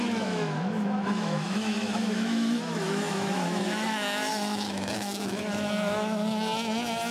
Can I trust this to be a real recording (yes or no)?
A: no